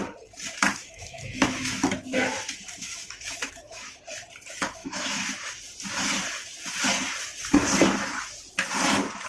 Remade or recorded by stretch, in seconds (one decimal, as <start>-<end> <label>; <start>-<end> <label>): 0.0-0.8 recorded; 0.8-4.0 remade; 4.0-4.8 recorded; 4.8-5.5 remade; 5.5-9.3 recorded